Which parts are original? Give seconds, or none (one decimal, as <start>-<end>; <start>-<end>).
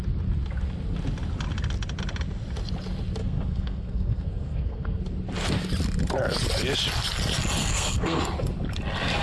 0.0-3.2; 5.0-7.6; 8.2-9.2